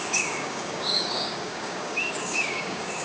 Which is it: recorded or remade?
remade